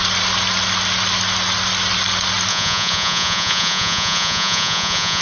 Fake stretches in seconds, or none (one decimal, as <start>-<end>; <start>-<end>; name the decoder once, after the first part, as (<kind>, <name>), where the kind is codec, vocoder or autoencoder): 2.5-5.2 (vocoder, Vocos)